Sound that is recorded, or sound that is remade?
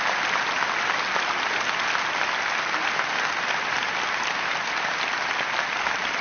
recorded